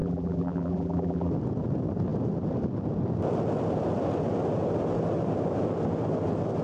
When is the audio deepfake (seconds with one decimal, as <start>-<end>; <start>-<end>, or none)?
0.0-1.3